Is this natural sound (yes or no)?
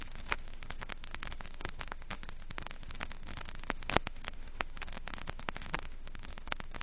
no